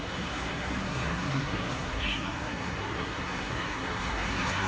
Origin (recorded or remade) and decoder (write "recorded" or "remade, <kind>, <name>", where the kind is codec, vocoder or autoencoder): remade, codec, SNAC